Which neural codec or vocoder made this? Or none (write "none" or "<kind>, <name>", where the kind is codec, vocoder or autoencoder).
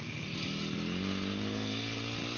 none